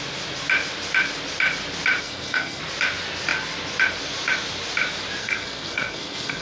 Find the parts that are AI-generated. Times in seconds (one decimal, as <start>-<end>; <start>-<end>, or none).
2.0-2.6; 5.2-6.4